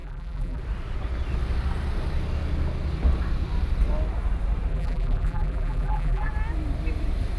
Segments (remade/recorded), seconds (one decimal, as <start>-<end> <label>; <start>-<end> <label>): 0.0-0.6 remade; 0.6-4.7 recorded; 4.7-6.3 remade; 6.3-7.4 recorded